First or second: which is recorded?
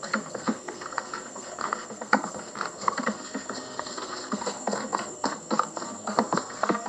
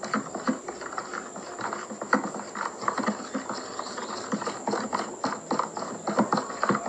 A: second